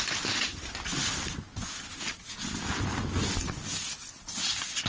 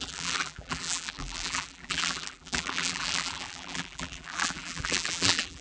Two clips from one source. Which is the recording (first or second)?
first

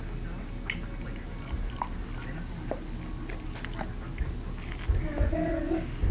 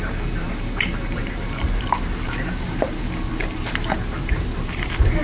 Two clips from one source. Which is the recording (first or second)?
first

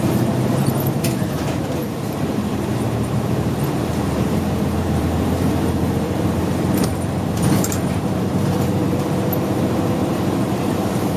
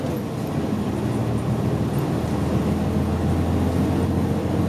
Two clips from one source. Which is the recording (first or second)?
second